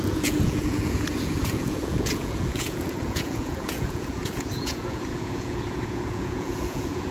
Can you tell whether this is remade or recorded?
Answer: remade